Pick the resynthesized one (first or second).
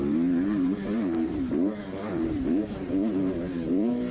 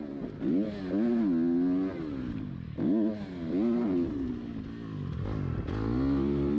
first